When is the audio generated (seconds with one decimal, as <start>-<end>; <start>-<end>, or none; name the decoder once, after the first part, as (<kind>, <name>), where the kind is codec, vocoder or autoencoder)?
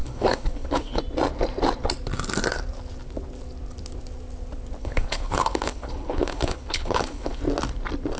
0.0-1.0 (codec, HILCodec); 4.8-7.4